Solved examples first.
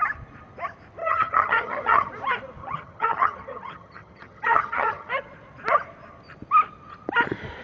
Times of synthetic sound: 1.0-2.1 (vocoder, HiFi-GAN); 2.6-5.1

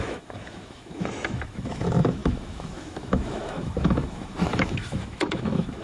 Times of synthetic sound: 0.0-5.8 (autoencoder, DAC-VAE)